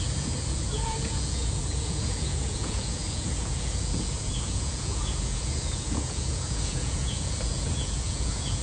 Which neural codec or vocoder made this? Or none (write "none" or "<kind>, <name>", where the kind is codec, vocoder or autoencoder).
vocoder, Vocos